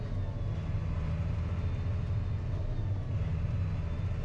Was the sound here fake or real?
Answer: real